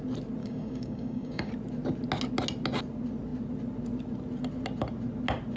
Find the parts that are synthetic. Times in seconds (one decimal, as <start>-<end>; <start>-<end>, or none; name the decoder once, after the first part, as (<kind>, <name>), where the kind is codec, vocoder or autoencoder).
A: 0.4-1.5 (codec, DAC)